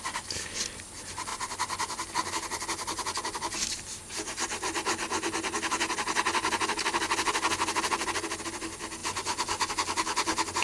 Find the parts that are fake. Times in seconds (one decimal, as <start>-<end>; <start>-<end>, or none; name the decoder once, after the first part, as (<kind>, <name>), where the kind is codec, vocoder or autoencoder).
none